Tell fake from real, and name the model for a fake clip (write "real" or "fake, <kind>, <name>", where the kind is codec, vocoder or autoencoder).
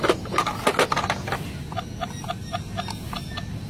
real